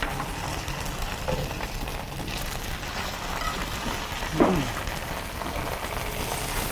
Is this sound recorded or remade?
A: recorded